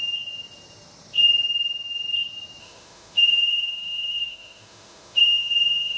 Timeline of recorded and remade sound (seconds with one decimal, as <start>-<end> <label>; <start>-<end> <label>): 0.0-2.6 recorded; 2.6-6.0 remade